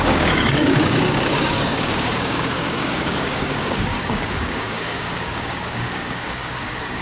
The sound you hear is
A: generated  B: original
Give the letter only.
A